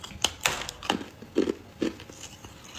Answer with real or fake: real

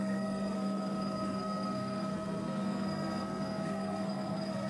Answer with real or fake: fake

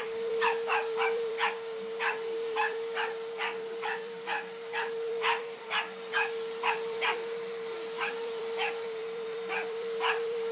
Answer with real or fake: fake